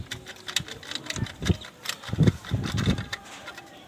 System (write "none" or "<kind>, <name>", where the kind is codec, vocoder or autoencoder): none